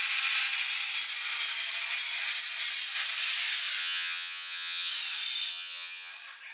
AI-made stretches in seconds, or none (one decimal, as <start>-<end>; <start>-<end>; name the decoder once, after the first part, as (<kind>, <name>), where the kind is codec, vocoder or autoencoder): 3.8-4.9 (vocoder, HiFi-GAN); 5.5-6.1